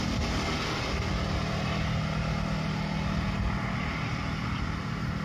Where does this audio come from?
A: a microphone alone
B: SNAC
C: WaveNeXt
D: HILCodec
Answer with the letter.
A